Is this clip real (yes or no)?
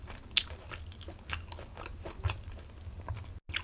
yes